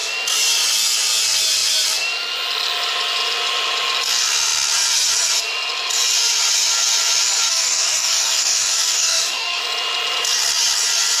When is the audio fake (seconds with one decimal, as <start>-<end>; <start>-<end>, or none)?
7.5-9.6